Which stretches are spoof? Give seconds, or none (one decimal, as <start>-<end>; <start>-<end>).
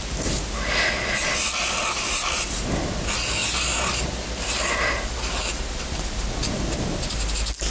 none